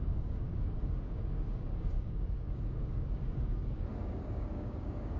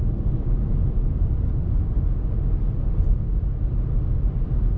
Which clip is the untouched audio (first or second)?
second